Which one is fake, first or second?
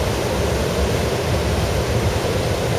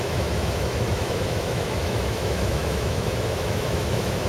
second